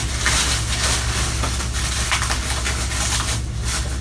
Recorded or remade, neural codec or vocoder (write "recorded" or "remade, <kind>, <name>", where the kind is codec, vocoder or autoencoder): recorded